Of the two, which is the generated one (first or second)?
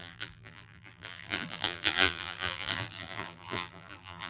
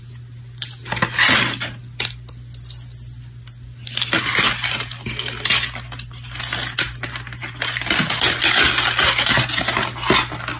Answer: first